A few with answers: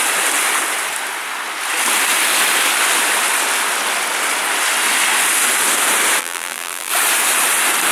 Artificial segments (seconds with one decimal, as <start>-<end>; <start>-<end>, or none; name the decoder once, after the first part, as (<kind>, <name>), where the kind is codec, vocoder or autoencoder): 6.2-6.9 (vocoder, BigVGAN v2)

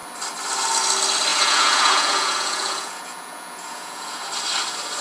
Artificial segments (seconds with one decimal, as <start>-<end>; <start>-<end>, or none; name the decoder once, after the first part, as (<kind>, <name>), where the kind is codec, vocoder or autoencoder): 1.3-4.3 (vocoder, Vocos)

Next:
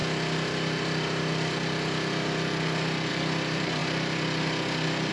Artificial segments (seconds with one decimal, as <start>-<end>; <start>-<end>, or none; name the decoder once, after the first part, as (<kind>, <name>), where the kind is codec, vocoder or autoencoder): none

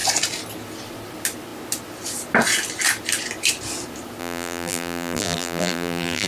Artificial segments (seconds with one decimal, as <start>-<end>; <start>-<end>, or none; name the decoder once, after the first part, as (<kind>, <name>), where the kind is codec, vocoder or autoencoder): 4.2-6.3 (vocoder, BigVGAN v2)